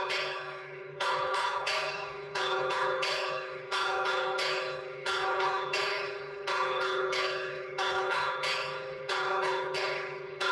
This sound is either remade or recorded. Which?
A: remade